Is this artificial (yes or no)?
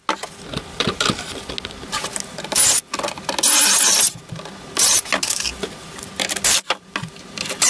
no